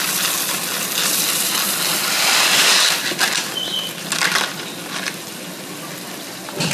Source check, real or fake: real